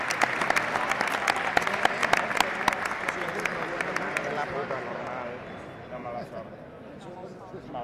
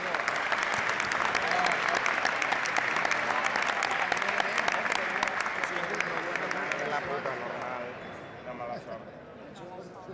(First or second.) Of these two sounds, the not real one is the first